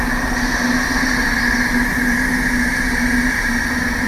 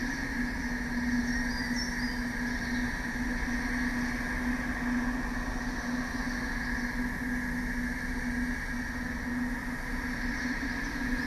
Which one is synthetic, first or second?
first